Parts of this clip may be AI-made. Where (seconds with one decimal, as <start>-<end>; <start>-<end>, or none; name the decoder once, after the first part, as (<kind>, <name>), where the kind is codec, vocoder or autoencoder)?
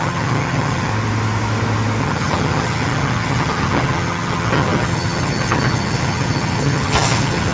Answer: 0.0-0.9 (vocoder, HiFi-GAN); 2.0-7.5